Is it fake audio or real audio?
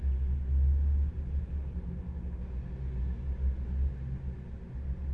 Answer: real